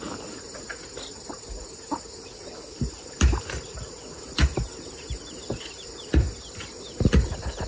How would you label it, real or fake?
real